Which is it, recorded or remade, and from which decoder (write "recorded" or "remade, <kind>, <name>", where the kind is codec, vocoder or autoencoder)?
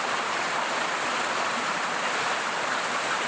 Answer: recorded